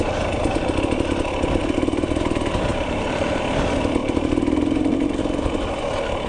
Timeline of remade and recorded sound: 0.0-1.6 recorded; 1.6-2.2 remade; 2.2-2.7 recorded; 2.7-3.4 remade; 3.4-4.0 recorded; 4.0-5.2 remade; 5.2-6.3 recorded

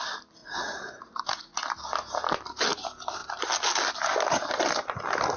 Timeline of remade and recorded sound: 0.0-0.4 recorded; 0.4-1.7 remade; 1.7-5.4 recorded

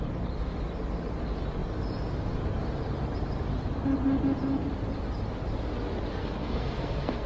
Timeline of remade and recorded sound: 0.0-6.2 recorded; 6.2-7.3 remade

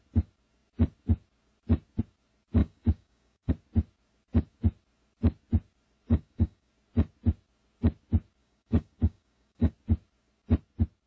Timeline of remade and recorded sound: 0.0-2.6 recorded; 2.6-3.5 remade; 3.5-6.1 recorded; 6.1-6.7 remade; 6.7-8.4 recorded; 8.4-9.7 remade; 9.7-11.1 recorded